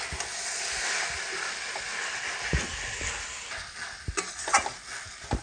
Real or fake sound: real